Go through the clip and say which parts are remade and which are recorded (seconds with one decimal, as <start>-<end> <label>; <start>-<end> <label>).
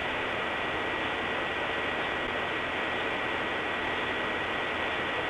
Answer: 0.0-0.6 remade; 0.6-5.3 recorded